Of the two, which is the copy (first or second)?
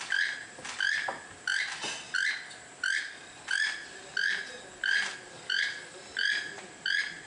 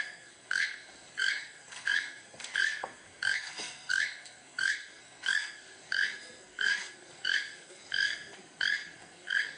second